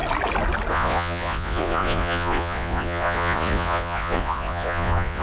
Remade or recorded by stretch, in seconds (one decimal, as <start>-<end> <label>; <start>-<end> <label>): 0.0-0.7 recorded; 0.7-5.2 remade